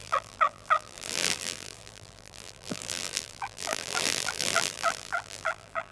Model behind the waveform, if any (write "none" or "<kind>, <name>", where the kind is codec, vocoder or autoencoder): vocoder, BigVGAN v2